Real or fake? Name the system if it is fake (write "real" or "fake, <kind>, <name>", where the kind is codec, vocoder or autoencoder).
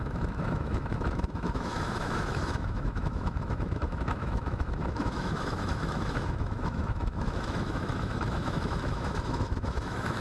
fake, autoencoder, DAC-VAE